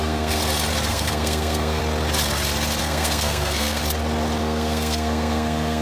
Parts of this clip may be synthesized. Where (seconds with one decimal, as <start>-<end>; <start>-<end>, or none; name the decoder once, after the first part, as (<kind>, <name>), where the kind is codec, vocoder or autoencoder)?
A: 0.0-0.4 (codec, SNAC); 0.9-1.8; 2.8-3.8; 4.4-5.8